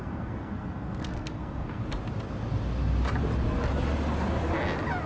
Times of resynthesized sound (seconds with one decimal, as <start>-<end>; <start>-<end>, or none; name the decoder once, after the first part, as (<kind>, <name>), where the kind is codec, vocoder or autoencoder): 0.0-1.8 (codec, SNAC)

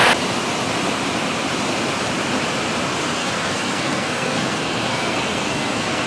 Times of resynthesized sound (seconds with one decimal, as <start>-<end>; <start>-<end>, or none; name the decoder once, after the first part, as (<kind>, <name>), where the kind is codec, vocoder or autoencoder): 3.2-6.1 (codec, SNAC)